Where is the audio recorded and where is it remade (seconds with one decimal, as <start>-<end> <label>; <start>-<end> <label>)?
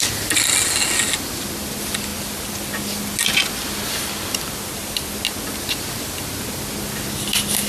0.0-7.7 recorded